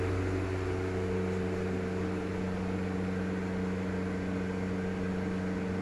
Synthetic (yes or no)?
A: no